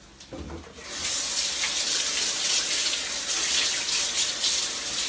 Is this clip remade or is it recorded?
recorded